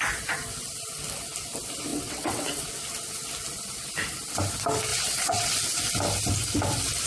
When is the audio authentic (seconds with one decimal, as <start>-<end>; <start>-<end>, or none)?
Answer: 0.0-1.9; 2.7-4.9; 5.5-7.1